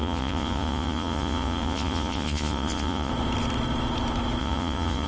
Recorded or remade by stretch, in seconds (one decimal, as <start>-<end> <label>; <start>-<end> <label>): 0.0-3.1 remade; 3.1-4.4 recorded; 4.4-5.1 remade